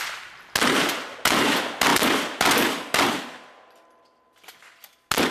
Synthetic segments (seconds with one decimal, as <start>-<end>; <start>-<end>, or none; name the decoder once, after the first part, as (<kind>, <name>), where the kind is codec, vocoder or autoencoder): none